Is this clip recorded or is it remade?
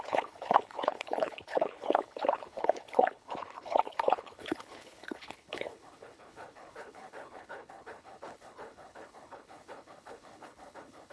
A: remade